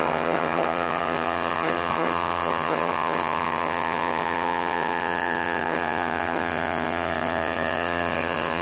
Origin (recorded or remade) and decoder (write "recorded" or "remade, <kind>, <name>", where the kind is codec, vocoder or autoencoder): remade, vocoder, HiFi-GAN